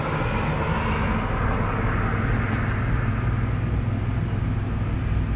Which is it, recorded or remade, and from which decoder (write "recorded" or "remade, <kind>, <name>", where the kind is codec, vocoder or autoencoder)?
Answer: recorded